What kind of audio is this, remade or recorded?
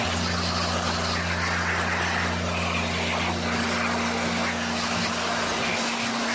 recorded